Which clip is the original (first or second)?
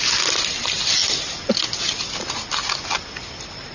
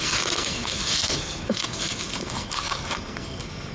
first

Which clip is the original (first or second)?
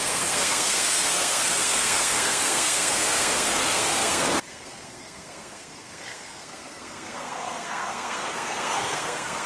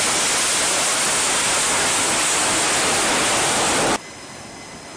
second